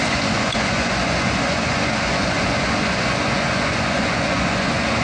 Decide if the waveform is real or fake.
fake